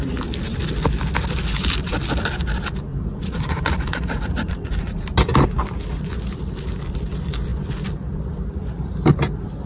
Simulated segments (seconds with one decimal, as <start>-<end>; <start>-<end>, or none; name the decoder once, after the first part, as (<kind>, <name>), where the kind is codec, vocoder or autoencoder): 2.9-5.0 (vocoder, Vocos)